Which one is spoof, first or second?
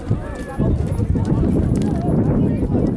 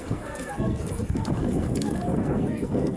second